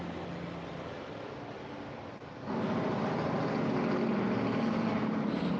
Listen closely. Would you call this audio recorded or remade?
recorded